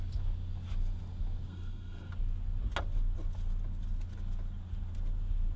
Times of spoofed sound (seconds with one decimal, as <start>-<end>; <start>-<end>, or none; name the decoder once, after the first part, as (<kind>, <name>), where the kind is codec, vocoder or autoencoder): 1.5-2.1 (codec, SNAC)